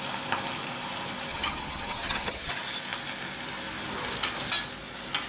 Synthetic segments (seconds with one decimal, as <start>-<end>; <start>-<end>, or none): 1.3-2.5